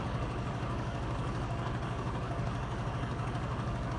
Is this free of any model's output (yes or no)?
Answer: no